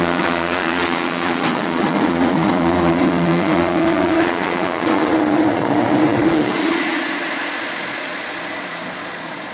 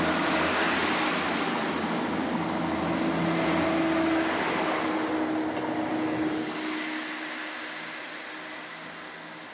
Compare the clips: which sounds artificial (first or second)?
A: first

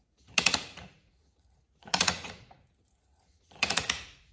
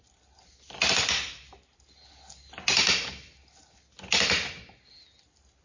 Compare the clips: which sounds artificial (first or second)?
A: first